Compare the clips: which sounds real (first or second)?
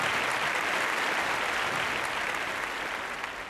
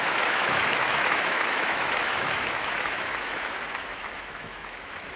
first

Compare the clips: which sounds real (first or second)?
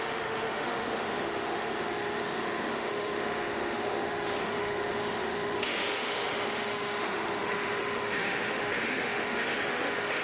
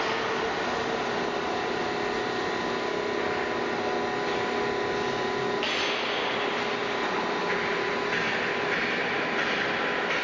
second